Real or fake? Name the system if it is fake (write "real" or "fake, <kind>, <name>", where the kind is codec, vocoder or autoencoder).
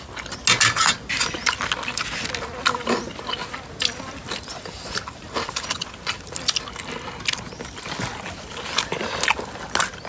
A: real